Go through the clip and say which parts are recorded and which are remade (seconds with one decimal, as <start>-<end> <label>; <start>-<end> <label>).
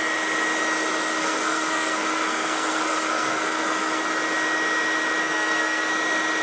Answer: 0.0-1.2 recorded; 1.2-4.0 remade; 4.0-5.2 recorded; 5.2-5.9 remade; 5.9-6.4 recorded